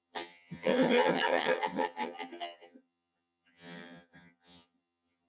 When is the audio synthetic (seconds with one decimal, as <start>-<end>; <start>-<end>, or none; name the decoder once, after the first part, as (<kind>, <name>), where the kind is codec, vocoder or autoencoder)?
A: 0.0-5.3 (vocoder, HiFi-GAN)